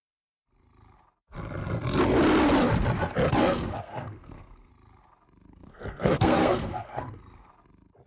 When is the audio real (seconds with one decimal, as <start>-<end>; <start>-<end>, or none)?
0.0-3.4; 4.7-5.5; 7.5-8.1